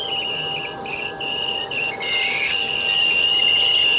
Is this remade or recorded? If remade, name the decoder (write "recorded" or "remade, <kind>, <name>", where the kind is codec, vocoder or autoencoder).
recorded